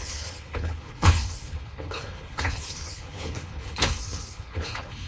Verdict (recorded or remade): remade